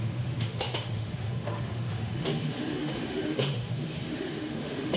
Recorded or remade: remade